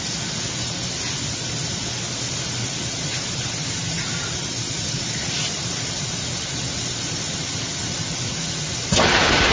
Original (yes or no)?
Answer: yes